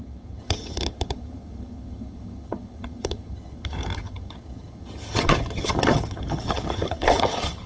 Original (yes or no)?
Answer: no